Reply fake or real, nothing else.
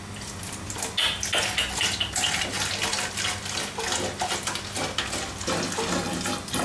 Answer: real